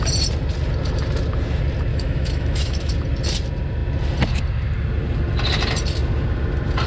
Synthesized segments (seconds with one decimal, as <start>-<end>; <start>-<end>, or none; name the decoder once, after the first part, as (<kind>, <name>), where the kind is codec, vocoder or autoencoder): 1.9-2.9 (autoencoder, DAC-VAE)